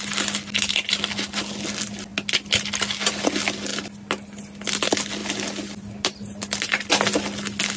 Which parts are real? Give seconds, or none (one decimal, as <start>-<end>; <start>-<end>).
0.0-7.8